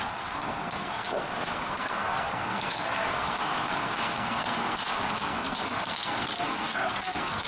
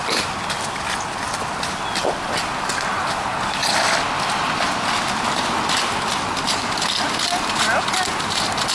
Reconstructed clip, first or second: first